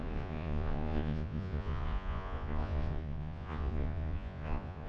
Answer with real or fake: fake